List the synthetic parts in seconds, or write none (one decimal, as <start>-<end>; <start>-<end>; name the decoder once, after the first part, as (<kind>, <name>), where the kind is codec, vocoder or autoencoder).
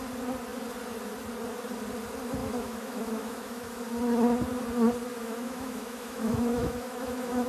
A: 2.4-3.8 (autoencoder, DAC-VAE); 5.1-7.5